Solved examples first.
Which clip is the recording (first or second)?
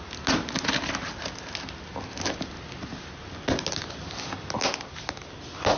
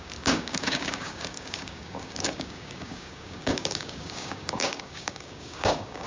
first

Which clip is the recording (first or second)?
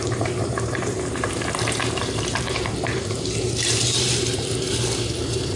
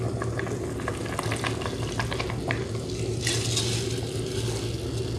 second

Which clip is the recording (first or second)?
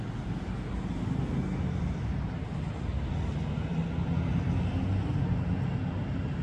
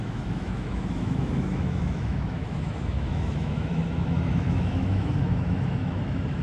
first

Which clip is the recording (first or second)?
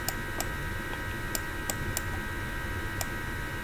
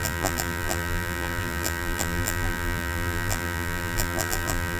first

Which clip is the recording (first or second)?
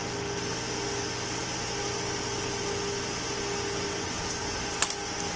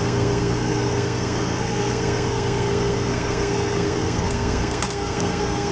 first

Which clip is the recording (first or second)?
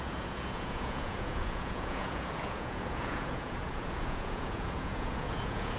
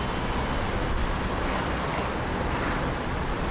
second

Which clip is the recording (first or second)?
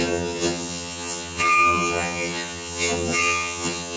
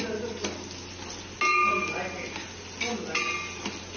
second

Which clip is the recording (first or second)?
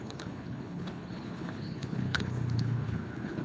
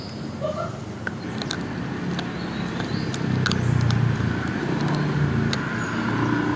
second